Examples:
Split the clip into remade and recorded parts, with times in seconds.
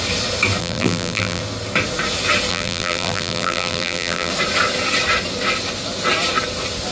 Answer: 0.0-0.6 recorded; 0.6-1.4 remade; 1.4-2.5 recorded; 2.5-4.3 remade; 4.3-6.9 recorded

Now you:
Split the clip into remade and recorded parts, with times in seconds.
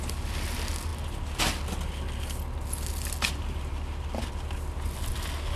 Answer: 0.0-5.6 recorded